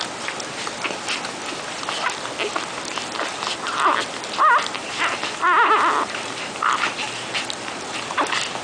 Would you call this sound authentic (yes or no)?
yes